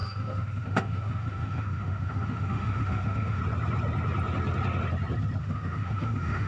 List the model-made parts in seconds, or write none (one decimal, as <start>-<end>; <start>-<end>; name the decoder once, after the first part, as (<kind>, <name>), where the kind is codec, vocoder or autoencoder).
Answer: 0.0-3.4 (autoencoder, DAC-VAE); 5.4-6.5